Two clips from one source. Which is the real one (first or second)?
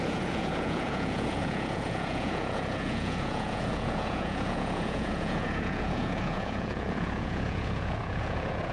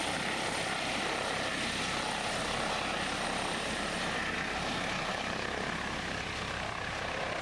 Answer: second